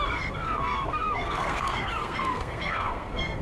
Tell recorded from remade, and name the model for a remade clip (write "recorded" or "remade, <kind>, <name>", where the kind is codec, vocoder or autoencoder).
remade, codec, SNAC